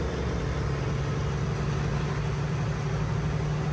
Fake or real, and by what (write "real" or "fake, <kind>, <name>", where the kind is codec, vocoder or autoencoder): real